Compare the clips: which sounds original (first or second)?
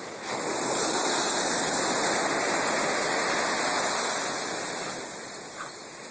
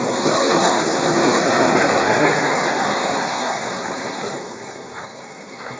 first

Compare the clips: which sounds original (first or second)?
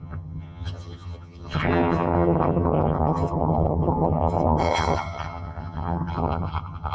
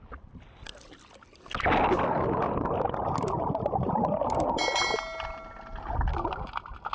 second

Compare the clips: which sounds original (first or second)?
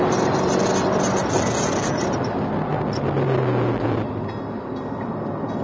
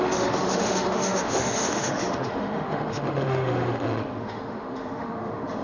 first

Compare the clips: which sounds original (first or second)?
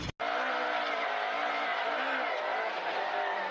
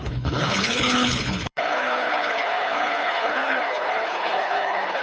first